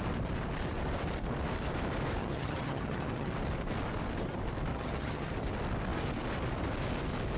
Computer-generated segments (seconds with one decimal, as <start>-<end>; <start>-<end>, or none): 2.2-3.3; 4.7-5.3